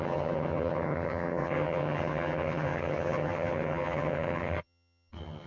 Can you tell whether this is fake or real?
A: fake